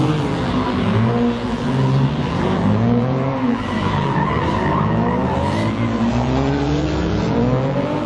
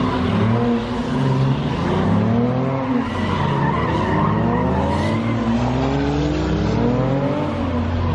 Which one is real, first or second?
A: second